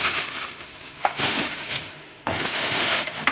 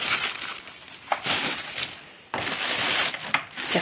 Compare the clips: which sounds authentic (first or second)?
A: second